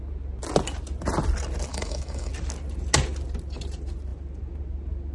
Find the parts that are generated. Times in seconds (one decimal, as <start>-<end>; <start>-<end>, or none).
1.7-2.3